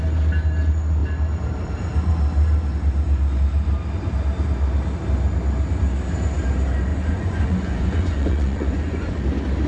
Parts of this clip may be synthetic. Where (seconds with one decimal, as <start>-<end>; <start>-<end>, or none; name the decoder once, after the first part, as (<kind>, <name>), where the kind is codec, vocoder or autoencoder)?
6.9-9.2 (vocoder, Vocos)